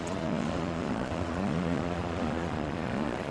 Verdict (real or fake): fake